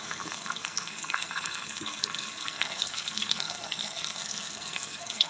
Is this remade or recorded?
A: remade